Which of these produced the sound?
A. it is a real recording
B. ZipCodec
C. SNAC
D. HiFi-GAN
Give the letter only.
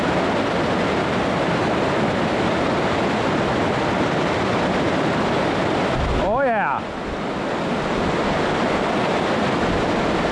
A